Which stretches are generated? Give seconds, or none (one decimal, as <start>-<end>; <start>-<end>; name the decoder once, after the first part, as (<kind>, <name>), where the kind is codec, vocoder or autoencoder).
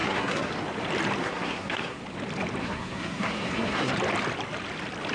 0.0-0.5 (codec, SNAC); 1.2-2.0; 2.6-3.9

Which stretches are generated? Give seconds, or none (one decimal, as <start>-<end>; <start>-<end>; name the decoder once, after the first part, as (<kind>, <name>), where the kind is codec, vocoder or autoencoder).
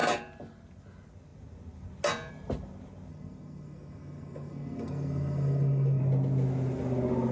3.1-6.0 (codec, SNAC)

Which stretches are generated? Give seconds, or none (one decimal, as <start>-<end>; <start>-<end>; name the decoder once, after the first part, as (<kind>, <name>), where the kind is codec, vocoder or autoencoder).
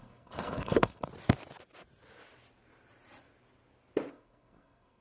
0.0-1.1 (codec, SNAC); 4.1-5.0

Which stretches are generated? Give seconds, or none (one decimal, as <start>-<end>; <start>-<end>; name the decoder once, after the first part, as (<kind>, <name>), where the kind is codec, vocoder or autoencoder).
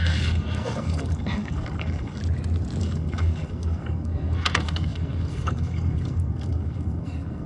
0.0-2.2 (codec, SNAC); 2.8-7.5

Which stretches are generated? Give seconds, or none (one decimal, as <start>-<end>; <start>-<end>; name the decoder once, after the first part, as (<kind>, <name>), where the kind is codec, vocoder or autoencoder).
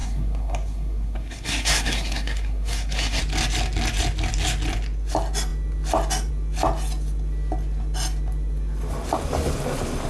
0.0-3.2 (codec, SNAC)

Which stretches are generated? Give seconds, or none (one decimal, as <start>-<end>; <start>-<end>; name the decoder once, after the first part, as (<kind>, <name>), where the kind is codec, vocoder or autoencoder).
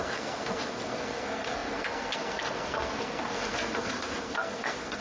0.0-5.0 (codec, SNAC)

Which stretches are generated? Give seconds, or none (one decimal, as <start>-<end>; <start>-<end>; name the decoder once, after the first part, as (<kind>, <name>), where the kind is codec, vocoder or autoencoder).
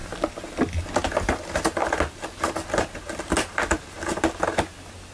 none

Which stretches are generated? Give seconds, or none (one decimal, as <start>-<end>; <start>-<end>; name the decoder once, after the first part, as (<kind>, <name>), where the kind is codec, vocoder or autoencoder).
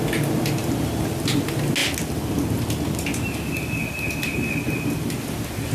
none